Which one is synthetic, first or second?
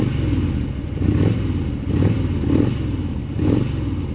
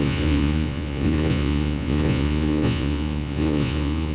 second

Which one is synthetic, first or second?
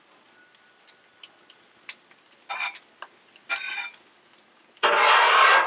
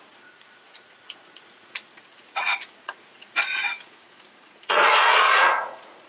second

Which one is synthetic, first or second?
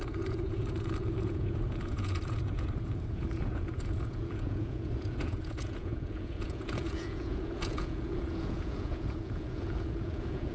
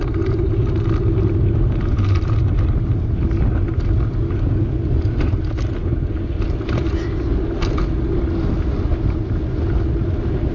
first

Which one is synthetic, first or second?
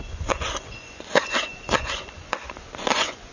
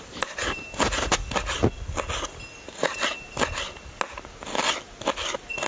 first